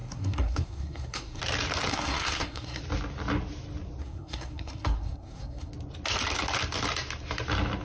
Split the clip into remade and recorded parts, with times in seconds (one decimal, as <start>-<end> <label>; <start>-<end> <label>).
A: 0.0-1.4 remade; 1.4-1.9 recorded; 1.9-2.8 remade; 2.8-4.0 recorded; 4.0-5.7 remade; 5.7-7.8 recorded